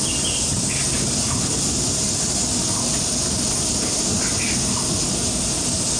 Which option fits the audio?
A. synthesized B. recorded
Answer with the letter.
B